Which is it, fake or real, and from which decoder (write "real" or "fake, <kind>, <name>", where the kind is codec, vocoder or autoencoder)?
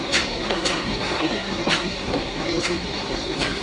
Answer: fake, codec, SNAC